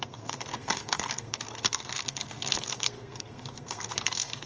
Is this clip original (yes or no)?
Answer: no